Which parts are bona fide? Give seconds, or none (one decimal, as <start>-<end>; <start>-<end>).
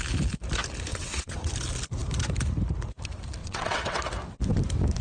0.0-0.9; 1.5-3.4; 4.0-5.0